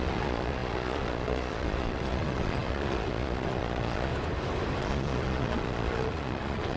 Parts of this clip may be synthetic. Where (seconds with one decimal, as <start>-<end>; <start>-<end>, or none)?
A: 0.0-4.1; 4.8-6.8